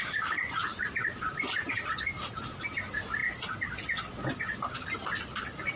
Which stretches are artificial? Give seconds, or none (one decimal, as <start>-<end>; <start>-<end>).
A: 0.7-1.8